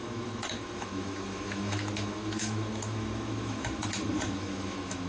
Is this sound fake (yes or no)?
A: yes